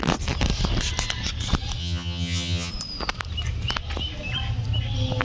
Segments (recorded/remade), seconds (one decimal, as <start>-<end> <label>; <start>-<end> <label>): 0.0-1.8 recorded; 1.8-2.7 remade; 2.7-5.2 recorded